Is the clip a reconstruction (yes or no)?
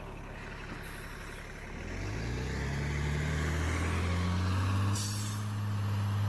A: no